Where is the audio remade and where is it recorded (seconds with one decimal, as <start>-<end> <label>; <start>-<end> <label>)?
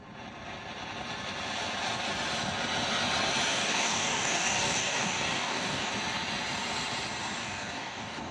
0.0-3.5 recorded; 3.5-5.9 remade; 5.9-7.4 recorded; 7.4-8.3 remade